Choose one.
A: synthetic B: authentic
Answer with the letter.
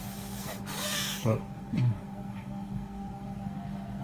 A